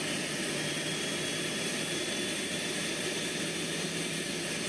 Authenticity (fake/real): real